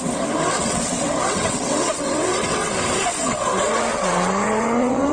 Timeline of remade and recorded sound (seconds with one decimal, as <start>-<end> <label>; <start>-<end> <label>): 0.0-2.6 remade; 2.6-3.2 recorded; 3.2-5.1 remade

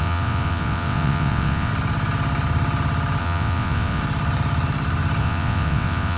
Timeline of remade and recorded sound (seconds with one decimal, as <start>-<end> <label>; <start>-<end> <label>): 0.0-1.7 remade; 1.7-3.2 recorded; 3.2-4.0 remade; 4.0-5.2 recorded; 5.2-6.2 remade

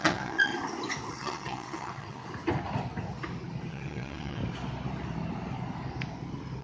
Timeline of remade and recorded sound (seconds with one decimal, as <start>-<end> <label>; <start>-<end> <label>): 0.0-0.5 remade; 0.5-1.1 recorded; 1.1-2.2 remade; 2.2-3.7 recorded; 3.7-4.4 remade; 4.4-6.6 recorded

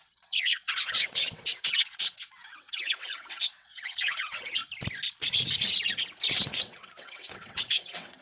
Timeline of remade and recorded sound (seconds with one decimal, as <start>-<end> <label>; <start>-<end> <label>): 0.0-4.6 remade; 4.6-6.3 recorded; 6.3-8.2 remade